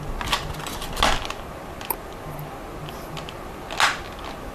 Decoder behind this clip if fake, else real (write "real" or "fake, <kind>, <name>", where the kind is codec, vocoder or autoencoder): real